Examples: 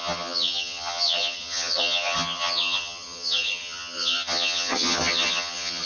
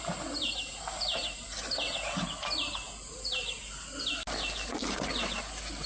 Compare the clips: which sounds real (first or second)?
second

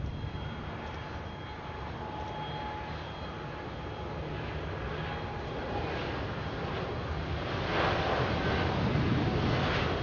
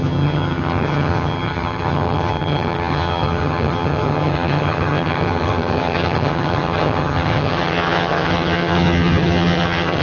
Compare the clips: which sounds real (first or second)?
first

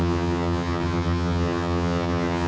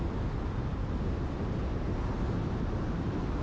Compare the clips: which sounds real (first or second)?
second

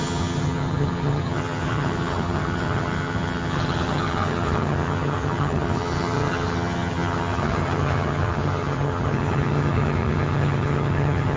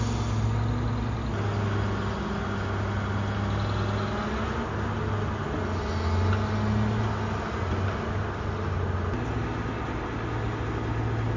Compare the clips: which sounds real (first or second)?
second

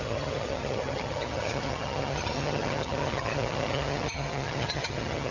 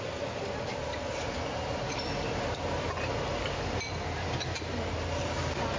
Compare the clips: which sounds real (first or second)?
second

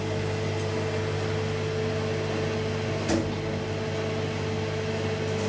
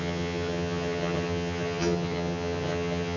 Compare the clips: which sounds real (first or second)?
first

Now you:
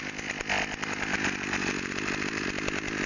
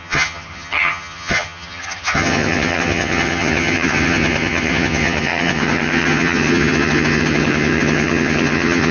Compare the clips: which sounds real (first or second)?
first